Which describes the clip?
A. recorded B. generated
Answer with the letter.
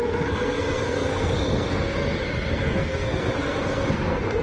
B